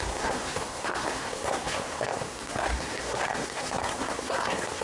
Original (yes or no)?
no